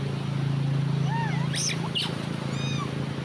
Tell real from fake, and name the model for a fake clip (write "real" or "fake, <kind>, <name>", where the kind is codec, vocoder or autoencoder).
real